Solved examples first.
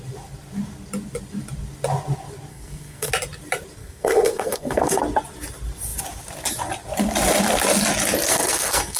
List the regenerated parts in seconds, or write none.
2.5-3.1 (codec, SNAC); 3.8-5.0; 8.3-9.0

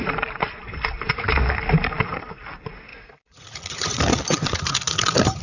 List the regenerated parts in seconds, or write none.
2.9-4.0 (vocoder, Vocos)